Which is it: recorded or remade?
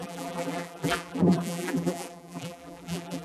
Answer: remade